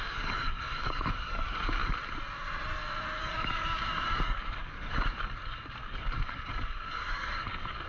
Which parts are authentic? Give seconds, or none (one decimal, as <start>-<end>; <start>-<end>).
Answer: 1.8-3.2